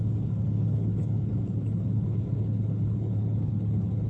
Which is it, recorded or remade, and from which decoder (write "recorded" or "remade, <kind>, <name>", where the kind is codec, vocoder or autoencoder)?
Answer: remade, codec, HILCodec